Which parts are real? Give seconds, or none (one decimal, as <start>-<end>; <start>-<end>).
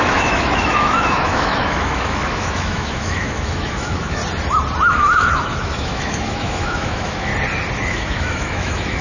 4.2-4.9; 7.3-7.9